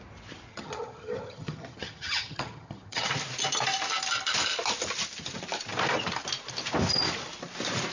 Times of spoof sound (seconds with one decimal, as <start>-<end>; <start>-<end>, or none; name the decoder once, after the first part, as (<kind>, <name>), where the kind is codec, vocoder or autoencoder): 0.5-3.1 (vocoder, HiFi-GAN)